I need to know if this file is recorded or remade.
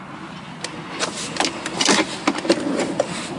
recorded